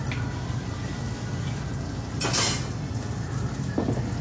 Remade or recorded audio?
recorded